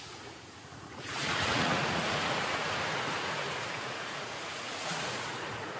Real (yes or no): no